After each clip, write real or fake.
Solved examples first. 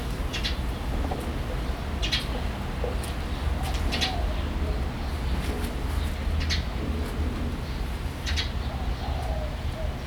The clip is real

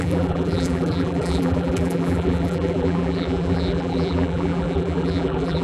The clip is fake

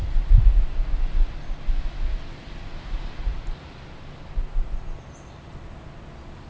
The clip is real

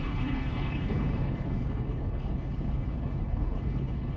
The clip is fake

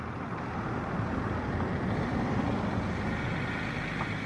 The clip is real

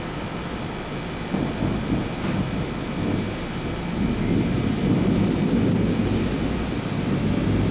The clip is real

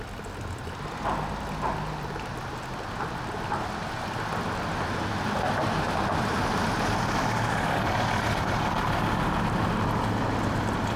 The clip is real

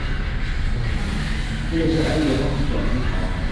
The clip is real